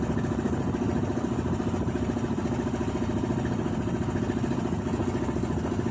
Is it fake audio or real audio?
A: real